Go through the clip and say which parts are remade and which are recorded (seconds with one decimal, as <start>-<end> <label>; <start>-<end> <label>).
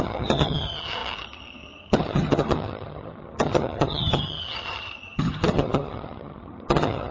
0.0-7.1 remade